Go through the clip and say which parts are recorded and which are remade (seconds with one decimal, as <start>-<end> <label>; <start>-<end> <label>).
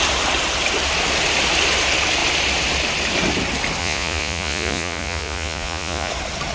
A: 0.0-3.8 recorded; 3.8-6.1 remade; 6.1-6.5 recorded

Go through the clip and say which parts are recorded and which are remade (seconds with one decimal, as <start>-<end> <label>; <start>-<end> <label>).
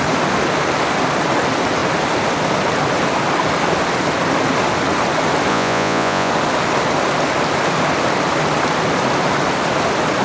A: 0.0-5.5 recorded; 5.5-6.3 remade; 6.3-10.2 recorded